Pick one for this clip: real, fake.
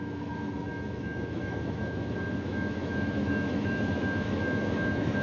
fake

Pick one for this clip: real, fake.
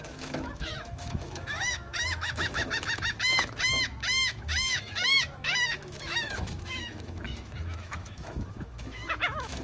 fake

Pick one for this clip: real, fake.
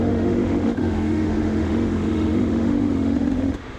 fake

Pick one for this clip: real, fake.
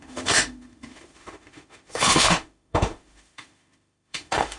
fake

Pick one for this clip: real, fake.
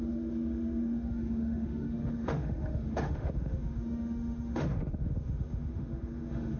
fake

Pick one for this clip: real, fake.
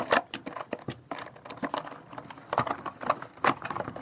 real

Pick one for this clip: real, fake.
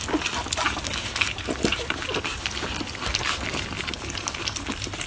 real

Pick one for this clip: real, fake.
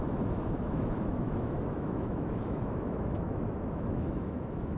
fake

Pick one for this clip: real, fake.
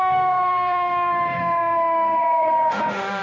fake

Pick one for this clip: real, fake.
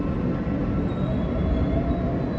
real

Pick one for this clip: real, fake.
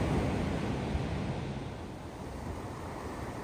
real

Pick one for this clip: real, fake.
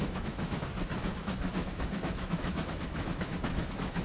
fake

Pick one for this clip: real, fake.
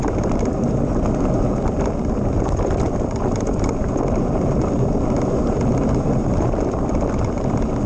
real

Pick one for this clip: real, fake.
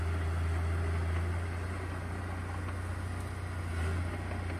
real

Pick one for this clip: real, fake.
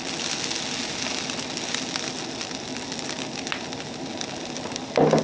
real